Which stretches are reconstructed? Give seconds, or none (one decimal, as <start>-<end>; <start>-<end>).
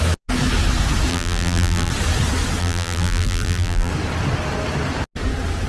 1.1-1.9; 2.6-3.9